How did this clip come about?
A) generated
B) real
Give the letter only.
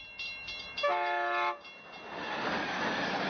B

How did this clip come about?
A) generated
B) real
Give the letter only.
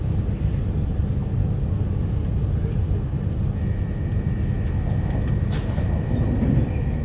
B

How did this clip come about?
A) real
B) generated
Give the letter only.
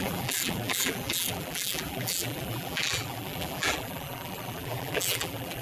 B